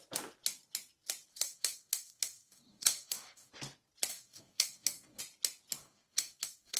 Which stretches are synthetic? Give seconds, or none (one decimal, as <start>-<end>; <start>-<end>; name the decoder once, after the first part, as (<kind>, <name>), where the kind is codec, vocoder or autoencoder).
1.3-3.5 (codec, DAC); 4.1-5.2; 5.8-6.8